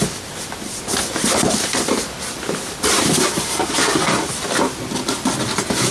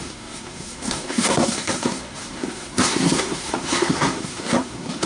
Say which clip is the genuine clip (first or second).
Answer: first